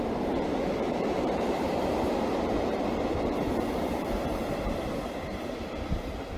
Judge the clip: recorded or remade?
remade